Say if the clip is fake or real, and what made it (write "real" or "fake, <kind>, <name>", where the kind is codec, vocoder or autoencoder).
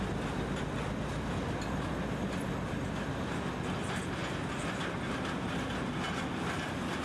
real